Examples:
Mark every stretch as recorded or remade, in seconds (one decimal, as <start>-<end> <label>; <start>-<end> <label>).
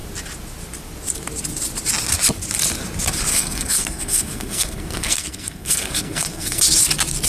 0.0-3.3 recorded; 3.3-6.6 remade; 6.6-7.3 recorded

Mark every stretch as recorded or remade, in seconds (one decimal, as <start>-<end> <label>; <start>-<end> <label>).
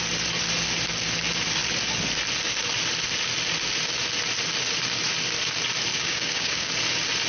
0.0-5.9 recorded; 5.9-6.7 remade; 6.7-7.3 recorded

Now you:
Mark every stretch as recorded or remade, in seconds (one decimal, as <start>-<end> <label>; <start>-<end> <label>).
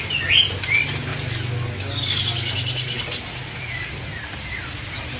0.0-1.1 remade; 1.1-3.0 recorded; 3.0-5.2 remade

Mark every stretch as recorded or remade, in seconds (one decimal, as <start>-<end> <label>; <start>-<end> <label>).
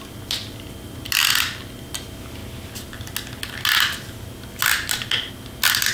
0.0-5.9 recorded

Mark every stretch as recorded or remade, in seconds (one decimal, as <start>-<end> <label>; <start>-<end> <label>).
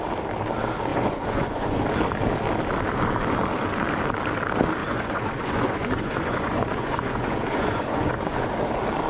0.0-0.9 recorded; 0.9-1.8 remade; 1.8-4.8 recorded; 4.8-8.6 remade; 8.6-9.1 recorded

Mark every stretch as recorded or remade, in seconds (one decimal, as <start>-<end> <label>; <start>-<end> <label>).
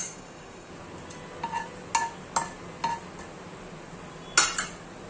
0.0-0.7 remade; 0.7-5.1 recorded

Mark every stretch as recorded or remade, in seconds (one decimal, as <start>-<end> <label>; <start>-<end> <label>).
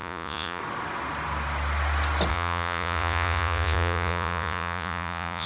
0.0-0.6 remade; 0.6-2.3 recorded; 2.3-5.5 remade